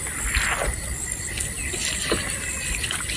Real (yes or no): yes